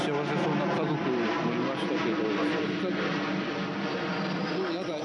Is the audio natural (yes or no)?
yes